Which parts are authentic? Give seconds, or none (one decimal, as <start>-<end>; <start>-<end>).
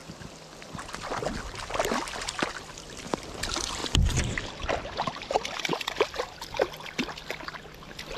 0.0-3.8; 5.6-8.2